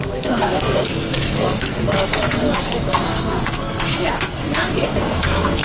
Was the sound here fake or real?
fake